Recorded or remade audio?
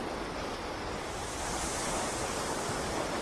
recorded